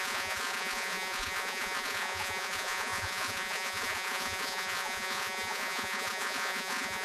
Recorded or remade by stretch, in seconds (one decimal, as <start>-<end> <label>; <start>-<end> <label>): 0.0-7.0 remade